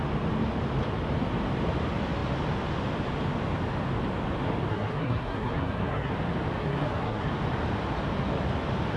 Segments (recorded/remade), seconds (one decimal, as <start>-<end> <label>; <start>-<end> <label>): 0.0-4.7 recorded; 4.7-6.1 remade; 6.1-6.6 recorded; 6.6-7.3 remade; 7.3-9.0 recorded